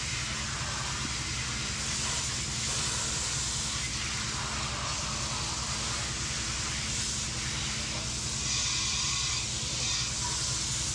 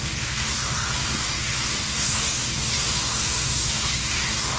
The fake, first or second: second